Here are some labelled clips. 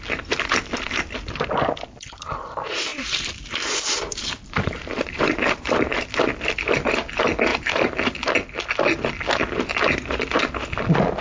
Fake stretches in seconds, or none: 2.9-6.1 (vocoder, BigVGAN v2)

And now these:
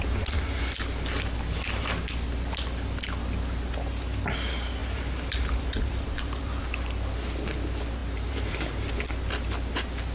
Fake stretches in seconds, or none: 4.8-6.6 (vocoder, BigVGAN v2); 8.0-8.9

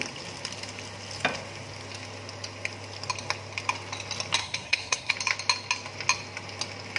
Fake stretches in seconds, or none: 4.4-5.1 (codec, SNAC)